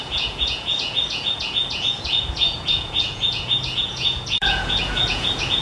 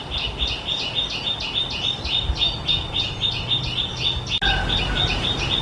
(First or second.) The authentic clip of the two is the second